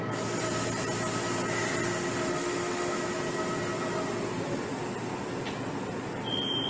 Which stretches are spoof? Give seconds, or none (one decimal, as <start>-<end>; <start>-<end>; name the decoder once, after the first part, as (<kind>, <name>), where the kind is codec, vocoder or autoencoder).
2.3-3.0 (autoencoder, DAC-VAE)